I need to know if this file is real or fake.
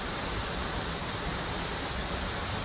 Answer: real